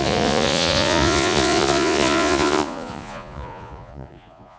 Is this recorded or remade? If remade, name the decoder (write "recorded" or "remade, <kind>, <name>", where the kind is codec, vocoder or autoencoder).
remade, vocoder, Vocos